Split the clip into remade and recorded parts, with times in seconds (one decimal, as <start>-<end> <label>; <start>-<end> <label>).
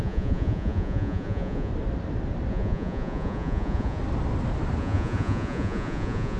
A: 0.0-1.7 remade; 1.7-2.5 recorded; 2.5-4.0 remade; 4.0-4.8 recorded; 4.8-6.4 remade